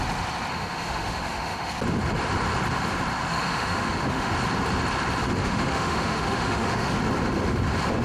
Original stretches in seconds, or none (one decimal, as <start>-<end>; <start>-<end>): 0.0-0.5; 1.7-3.3; 4.3-5.4; 7.0-8.0